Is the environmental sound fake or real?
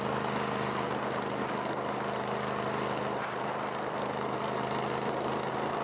real